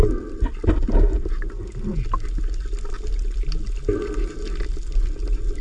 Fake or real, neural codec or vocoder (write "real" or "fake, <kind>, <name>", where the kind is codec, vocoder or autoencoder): real